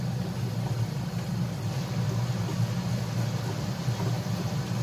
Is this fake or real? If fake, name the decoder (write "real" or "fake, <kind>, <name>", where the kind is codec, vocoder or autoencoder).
real